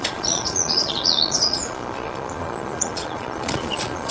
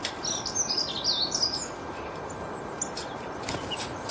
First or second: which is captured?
second